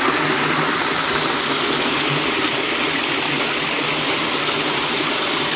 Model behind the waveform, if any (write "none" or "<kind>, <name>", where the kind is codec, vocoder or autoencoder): none